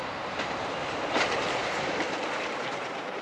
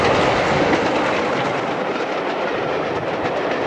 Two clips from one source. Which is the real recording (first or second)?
second